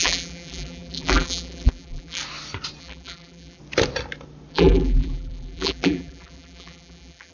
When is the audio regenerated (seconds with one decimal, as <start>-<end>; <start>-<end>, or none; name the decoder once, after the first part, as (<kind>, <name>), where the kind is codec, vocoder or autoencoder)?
0.0-2.2 (vocoder, BigVGAN v2); 2.8-3.6; 4.5-7.3